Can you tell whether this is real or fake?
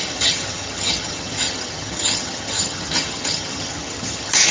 fake